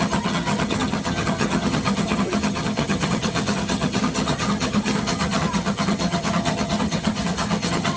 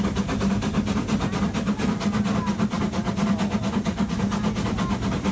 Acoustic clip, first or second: second